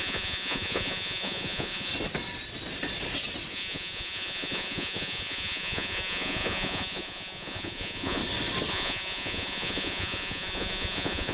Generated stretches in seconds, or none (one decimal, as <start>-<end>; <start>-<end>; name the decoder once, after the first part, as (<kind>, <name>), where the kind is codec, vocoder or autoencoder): 0.0-1.9 (vocoder, Vocos); 3.5-8.2; 8.7-11.3